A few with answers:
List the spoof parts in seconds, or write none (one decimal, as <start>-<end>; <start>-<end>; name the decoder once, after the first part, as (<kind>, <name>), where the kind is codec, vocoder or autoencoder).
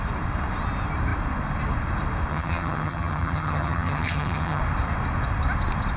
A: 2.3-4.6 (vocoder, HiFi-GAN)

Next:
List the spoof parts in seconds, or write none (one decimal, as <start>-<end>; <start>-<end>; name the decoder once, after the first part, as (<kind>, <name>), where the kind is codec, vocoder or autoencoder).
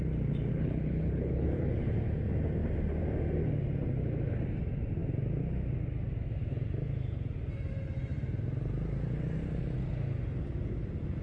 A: 0.5-1.7 (codec, HILCodec)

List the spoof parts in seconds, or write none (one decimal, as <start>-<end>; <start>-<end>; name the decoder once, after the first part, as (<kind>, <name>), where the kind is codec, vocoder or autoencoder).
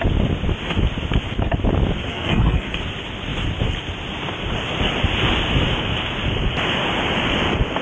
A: 2.1-2.7 (codec, SNAC)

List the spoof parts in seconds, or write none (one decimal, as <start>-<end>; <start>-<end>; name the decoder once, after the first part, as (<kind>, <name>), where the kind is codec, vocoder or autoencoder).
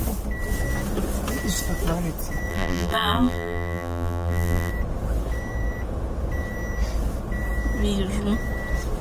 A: 2.5-4.7 (vocoder, BigVGAN v2)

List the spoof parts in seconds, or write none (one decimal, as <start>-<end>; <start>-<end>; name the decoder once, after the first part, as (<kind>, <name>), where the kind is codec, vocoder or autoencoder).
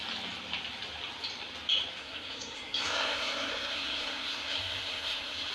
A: 2.0-5.5 (codec, SNAC)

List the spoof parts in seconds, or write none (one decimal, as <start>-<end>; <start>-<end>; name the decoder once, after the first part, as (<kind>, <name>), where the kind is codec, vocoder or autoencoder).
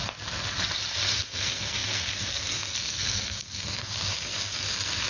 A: 1.1-5.1 (codec, SNAC)